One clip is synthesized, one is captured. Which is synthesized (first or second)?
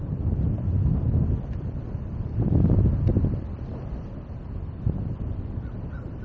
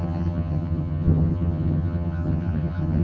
second